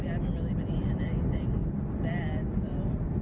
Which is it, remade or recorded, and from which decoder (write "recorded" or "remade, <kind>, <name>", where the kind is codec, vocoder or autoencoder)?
recorded